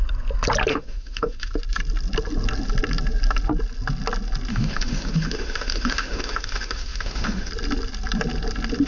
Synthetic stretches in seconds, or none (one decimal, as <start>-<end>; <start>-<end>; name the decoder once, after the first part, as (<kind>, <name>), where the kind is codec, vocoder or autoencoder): 0.7-1.5 (autoencoder, DAC-VAE); 4.5-7.5